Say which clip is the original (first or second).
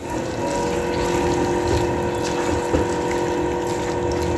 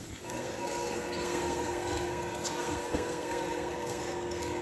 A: first